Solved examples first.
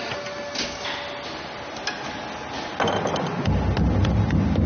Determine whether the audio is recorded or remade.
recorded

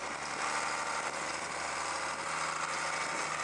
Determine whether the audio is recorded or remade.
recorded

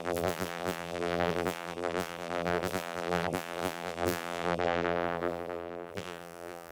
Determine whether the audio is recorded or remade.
remade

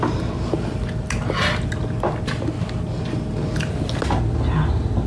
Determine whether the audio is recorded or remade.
recorded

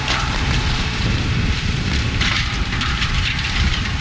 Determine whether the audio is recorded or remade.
remade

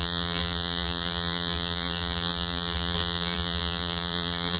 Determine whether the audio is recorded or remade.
remade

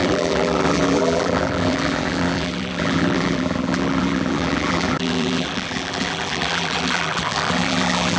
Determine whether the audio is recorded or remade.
remade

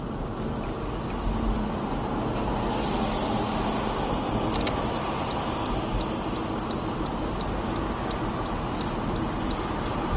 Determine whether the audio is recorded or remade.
recorded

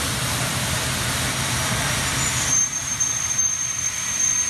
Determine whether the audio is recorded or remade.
remade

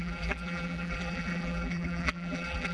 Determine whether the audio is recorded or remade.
remade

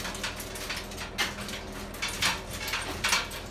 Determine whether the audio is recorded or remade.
recorded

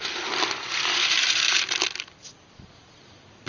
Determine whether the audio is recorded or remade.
remade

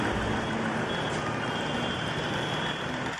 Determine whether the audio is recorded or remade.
recorded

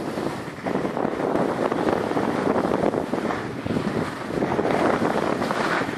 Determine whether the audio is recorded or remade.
recorded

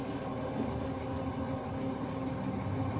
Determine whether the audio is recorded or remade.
recorded